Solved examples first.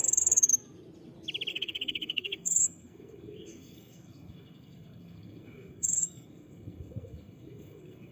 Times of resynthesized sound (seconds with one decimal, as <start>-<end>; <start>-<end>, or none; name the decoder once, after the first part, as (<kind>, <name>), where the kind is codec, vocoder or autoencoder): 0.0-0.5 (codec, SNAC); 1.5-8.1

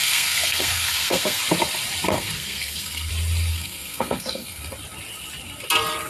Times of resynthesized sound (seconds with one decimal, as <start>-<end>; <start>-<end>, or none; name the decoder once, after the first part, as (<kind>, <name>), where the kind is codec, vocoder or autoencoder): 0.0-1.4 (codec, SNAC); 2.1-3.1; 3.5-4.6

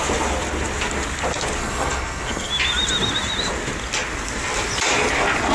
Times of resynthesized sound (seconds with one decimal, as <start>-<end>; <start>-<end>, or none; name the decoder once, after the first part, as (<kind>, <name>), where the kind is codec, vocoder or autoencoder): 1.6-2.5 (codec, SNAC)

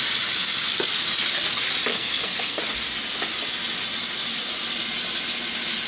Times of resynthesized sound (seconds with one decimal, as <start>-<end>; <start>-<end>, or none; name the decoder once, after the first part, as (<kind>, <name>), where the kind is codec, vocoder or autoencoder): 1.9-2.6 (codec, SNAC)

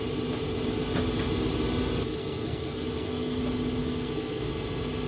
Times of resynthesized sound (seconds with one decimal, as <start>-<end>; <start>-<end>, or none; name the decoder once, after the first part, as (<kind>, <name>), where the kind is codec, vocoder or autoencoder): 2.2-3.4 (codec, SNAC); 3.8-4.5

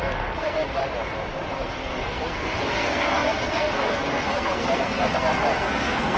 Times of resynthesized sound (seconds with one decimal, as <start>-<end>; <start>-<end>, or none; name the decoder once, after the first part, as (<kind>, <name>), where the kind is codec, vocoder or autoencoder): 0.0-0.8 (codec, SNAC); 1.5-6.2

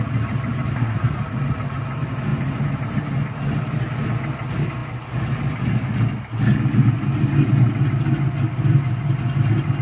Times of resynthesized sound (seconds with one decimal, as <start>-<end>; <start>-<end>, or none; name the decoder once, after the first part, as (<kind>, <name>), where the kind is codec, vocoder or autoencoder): 0.7-1.2 (codec, SNAC)